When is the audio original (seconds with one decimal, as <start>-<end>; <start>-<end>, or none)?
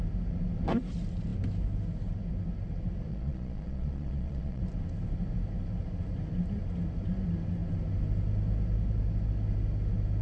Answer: 0.0-3.1; 4.6-10.2